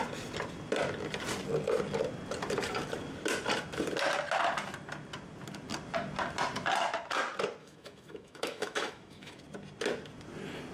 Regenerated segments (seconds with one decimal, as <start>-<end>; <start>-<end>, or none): 7.6-9.4